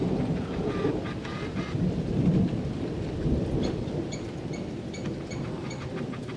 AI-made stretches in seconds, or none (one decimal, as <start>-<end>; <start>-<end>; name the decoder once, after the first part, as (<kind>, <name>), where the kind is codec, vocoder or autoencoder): none